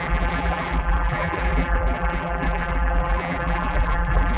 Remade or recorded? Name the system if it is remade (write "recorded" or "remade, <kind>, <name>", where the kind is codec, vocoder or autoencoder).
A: remade, vocoder, BigVGAN v2